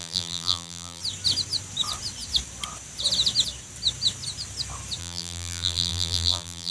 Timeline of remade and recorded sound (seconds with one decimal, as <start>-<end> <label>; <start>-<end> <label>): 0.0-1.0 remade; 1.0-5.0 recorded; 5.0-6.7 remade